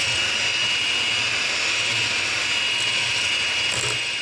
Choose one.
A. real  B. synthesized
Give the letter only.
A